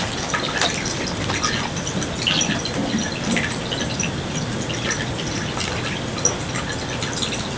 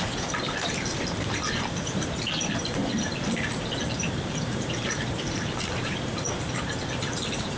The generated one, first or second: second